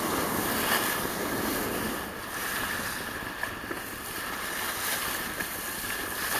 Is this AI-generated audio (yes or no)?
no